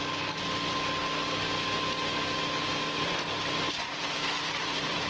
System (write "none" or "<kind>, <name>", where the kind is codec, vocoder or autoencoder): none